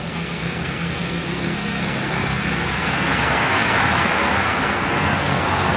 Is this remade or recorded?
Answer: remade